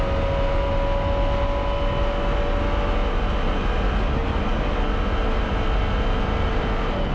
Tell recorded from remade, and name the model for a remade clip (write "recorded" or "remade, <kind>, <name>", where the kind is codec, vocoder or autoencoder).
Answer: recorded